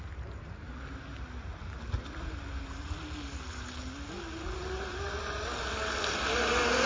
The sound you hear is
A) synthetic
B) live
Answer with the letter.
B